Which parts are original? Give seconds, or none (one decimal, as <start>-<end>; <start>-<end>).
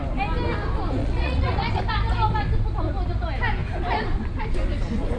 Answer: 0.0-1.0; 1.8-5.2